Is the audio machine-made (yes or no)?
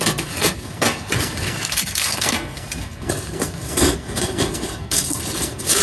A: yes